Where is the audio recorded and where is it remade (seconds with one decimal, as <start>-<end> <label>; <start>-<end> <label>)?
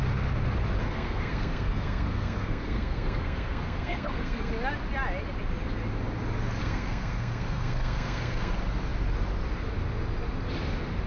0.0-0.8 recorded; 0.8-4.5 remade; 4.5-6.6 recorded; 6.6-8.5 remade; 8.5-11.1 recorded